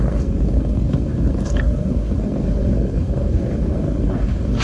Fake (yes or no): yes